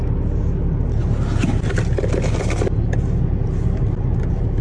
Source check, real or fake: real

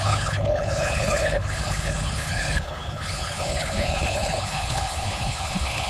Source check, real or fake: fake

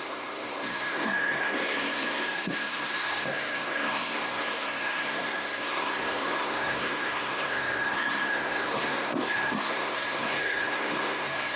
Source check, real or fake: fake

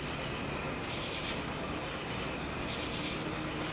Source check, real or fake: real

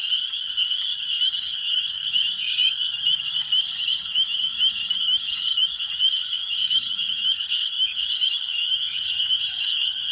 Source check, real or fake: fake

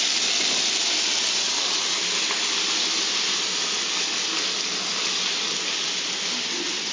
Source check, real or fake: fake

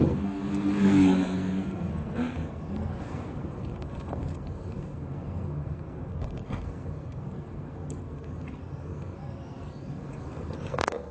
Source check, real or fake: fake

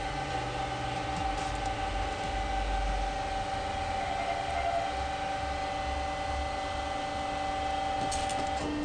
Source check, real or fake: real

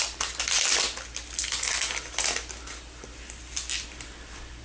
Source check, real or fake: real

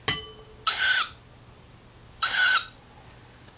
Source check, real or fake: real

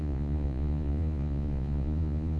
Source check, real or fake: fake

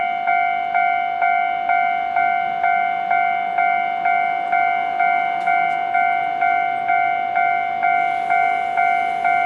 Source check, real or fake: real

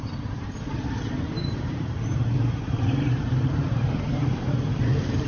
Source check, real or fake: fake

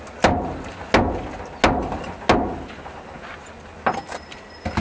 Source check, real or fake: real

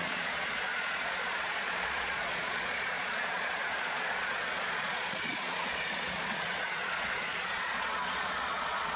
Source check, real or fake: fake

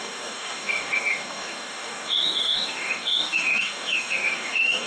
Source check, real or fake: fake